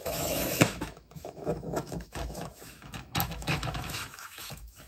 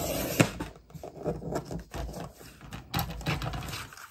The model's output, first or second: first